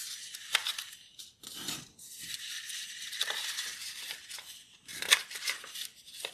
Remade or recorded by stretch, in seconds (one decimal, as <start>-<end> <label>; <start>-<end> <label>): 0.0-0.6 recorded; 0.6-3.9 remade; 3.9-4.9 recorded; 4.9-5.5 remade; 5.5-6.3 recorded